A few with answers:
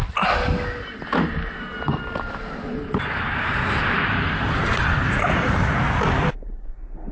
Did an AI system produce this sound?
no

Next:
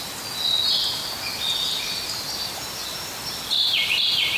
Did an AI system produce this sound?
no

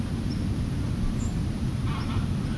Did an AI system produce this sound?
no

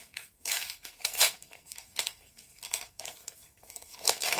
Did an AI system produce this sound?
yes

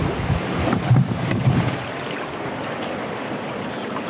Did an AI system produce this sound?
no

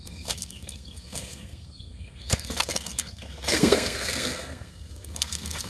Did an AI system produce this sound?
yes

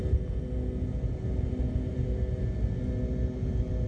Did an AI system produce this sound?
no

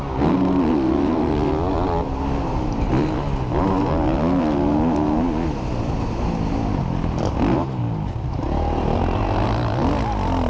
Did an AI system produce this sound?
no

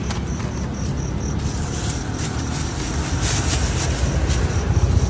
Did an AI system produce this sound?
no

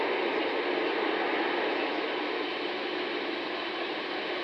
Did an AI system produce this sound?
no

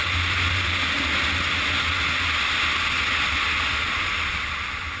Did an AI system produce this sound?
no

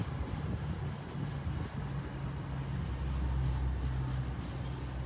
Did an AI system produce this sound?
no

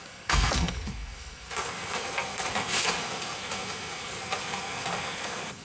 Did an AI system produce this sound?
yes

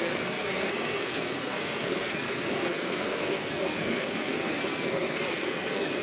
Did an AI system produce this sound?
yes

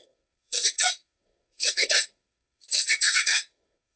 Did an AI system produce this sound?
yes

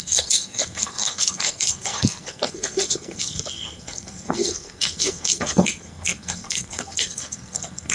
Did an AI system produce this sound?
yes